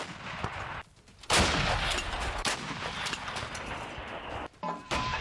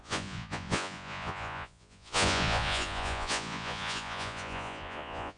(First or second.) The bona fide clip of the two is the first